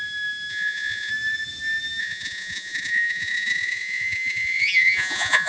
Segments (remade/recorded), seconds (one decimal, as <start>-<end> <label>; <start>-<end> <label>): 0.0-0.5 recorded; 0.5-1.1 remade; 1.1-2.0 recorded; 2.0-5.5 remade